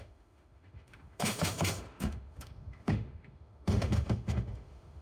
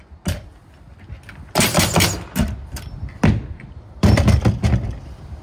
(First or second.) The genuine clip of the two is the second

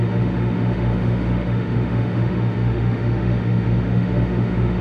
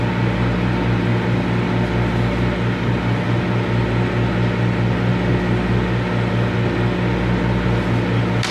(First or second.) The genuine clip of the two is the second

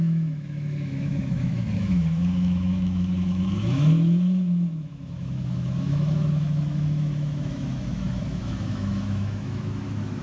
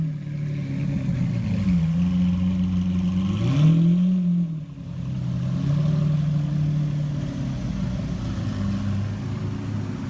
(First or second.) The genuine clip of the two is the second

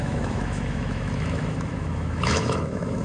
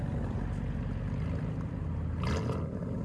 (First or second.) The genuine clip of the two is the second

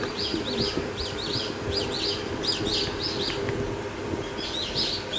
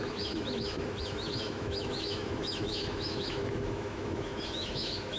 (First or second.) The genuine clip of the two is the first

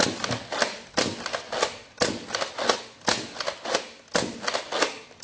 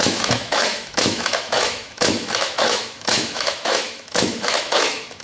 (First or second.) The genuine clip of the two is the first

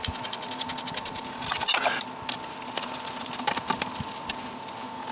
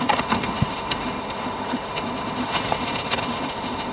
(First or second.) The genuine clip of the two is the first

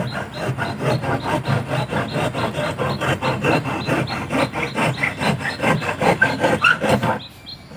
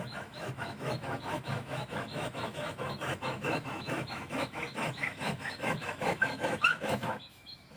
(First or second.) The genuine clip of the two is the first